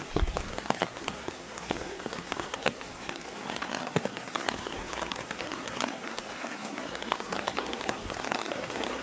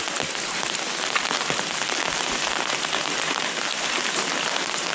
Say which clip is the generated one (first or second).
first